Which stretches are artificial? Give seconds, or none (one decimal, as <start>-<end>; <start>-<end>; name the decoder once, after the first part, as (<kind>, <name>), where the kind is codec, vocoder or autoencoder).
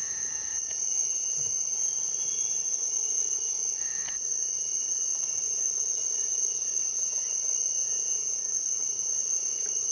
7.8-8.4 (vocoder, Vocos)